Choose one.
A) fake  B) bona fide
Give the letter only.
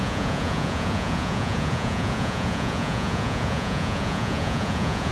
A